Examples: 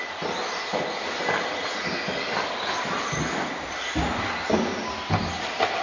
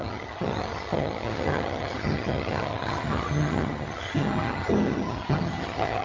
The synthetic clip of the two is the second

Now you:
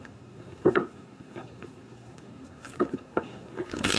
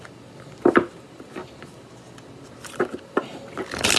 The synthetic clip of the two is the first